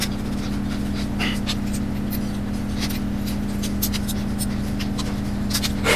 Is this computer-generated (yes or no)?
no